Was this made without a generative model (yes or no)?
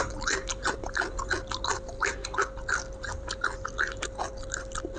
yes